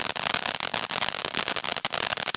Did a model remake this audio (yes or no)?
no